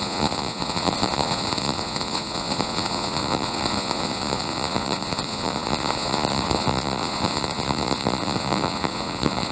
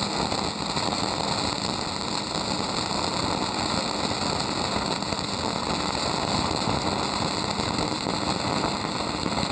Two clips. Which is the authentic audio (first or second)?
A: second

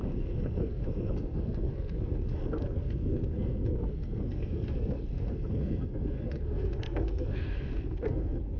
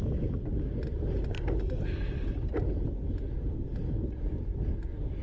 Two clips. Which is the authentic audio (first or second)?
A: second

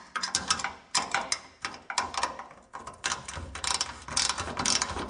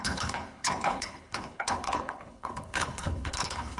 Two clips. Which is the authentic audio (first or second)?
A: first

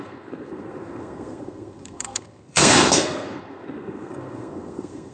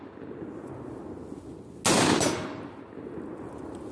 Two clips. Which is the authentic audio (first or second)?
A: second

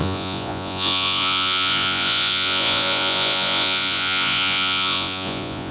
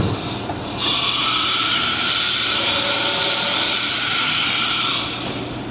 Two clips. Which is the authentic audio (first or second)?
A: second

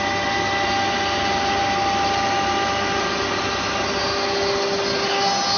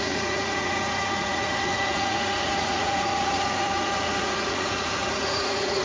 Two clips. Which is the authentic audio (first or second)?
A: first